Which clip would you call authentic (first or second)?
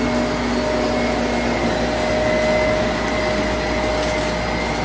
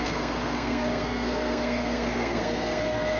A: first